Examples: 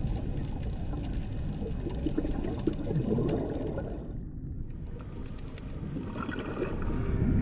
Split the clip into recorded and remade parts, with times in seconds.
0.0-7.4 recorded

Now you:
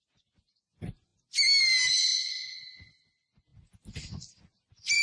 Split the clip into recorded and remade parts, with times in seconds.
0.0-5.0 recorded